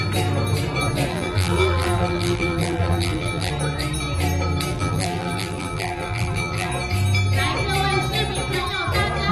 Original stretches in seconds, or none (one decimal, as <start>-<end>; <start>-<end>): 0.0-1.1; 3.5-4.7; 6.7-9.3